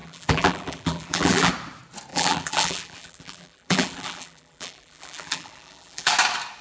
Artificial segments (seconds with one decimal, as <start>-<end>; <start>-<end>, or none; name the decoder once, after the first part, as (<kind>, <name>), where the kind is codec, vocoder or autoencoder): 0.0-1.5 (vocoder, BigVGAN v2); 2.1-6.1